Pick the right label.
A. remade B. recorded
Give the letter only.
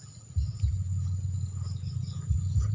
B